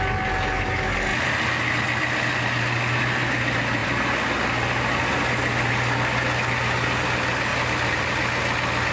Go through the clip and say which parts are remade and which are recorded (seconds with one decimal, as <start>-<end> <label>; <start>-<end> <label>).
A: 0.0-7.5 recorded; 7.5-8.0 remade; 8.0-8.9 recorded